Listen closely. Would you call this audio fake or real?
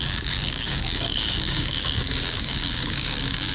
fake